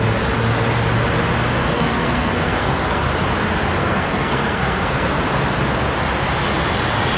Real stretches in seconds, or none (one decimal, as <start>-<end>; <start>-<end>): 0.0-1.6; 3.0-3.8; 5.2-7.2